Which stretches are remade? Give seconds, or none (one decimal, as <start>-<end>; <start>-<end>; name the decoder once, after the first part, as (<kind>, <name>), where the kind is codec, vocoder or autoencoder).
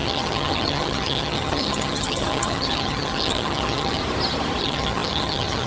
0.0-4.0 (vocoder, HiFi-GAN); 4.6-5.7